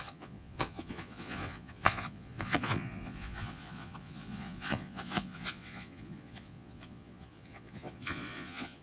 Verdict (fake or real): fake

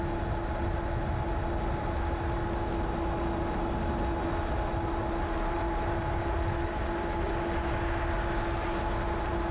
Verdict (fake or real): real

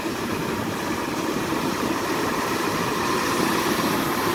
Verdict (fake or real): fake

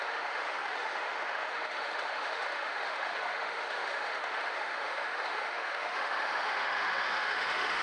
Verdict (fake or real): fake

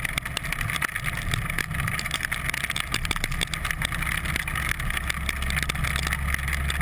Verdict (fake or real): real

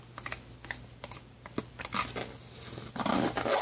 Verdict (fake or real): real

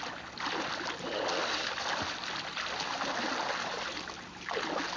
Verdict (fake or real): real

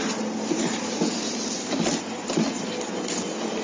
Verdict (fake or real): real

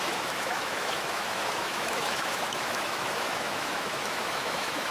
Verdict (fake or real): fake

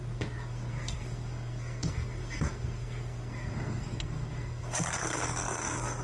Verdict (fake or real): fake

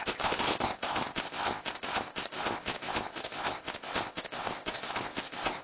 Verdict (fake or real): fake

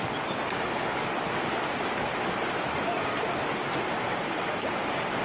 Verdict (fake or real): real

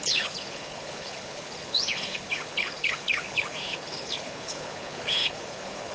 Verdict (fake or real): fake